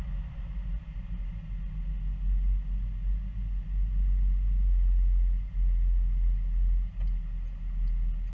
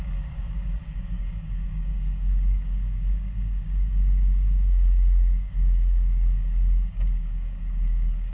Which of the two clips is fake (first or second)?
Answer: second